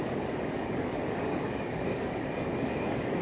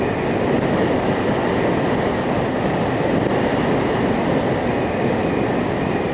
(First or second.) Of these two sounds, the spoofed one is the first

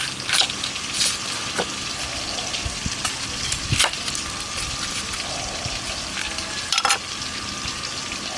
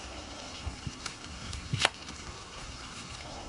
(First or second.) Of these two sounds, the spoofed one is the second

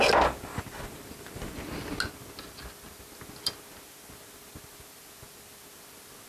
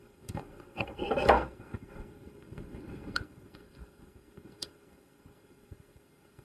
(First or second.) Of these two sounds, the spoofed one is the second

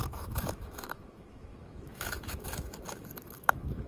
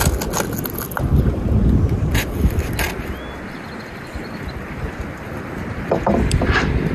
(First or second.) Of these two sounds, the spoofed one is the first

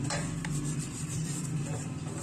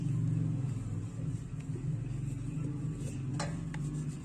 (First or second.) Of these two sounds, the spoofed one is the first